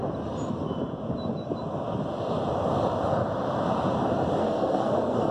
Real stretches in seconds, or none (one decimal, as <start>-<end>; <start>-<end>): 0.0-4.4